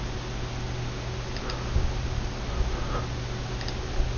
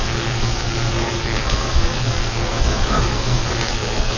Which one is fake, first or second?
second